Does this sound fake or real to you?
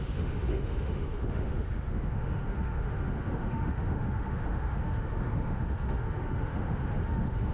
fake